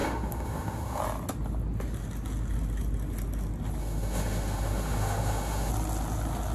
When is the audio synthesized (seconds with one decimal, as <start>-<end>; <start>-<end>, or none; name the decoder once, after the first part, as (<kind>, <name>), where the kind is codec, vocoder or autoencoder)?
0.0-1.0 (autoencoder, DAC-VAE); 3.8-5.7